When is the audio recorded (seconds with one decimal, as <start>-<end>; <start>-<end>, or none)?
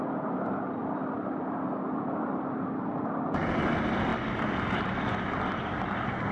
0.0-4.1; 5.7-6.3